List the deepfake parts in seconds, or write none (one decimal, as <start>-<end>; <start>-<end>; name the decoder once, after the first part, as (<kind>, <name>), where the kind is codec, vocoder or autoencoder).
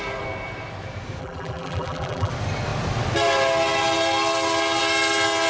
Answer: 1.2-2.3 (vocoder, BigVGAN v2)